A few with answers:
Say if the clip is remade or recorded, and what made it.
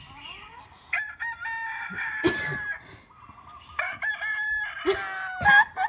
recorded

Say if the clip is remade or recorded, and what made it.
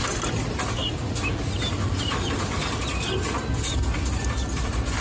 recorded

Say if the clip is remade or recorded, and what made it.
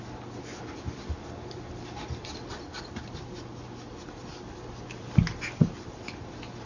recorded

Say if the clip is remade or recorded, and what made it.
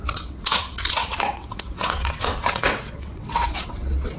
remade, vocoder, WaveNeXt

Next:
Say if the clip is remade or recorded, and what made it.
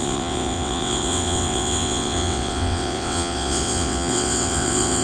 remade, vocoder, WaveNeXt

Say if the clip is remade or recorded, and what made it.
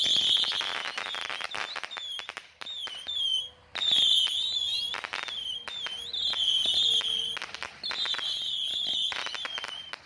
recorded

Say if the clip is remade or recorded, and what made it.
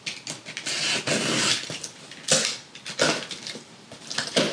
recorded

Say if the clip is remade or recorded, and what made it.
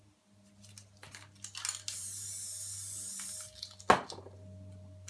recorded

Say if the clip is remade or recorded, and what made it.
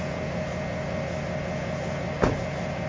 recorded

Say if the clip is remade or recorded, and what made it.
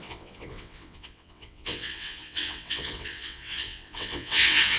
remade, vocoder, WaveNeXt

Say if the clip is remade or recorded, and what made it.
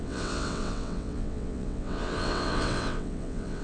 remade, vocoder, WaveNeXt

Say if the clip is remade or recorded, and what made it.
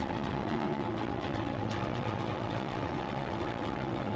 remade, vocoder, WaveNeXt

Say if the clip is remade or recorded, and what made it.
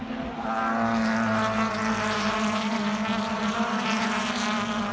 recorded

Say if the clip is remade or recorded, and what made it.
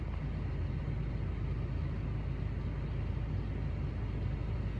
recorded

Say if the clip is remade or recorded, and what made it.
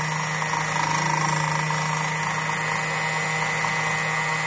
recorded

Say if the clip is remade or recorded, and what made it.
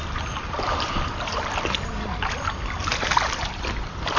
recorded